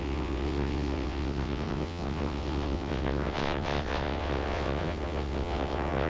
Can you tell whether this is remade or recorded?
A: remade